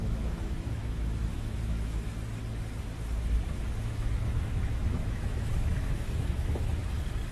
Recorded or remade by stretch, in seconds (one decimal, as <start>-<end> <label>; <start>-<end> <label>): 0.0-2.1 remade; 2.1-3.8 recorded; 3.8-6.8 remade; 6.8-7.3 recorded